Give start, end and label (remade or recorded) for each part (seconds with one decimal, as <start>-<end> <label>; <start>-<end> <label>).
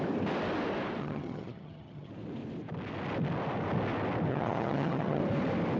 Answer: 0.0-1.0 recorded; 1.0-2.1 remade; 2.1-4.3 recorded; 4.3-5.2 remade; 5.2-5.8 recorded